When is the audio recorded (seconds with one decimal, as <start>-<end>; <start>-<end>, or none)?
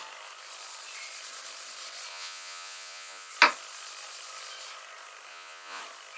0.0-2.1; 3.3-5.3; 5.8-6.2